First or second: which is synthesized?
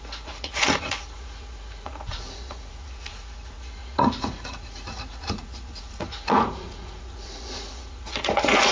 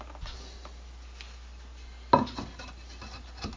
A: first